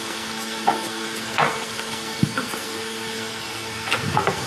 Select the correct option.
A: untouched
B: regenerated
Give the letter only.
B